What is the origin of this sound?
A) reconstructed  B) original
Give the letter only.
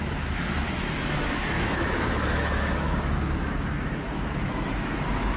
A